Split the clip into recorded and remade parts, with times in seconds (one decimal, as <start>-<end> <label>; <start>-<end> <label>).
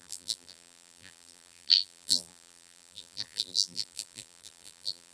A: 0.0-5.1 remade